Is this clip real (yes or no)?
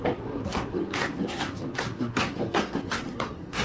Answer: no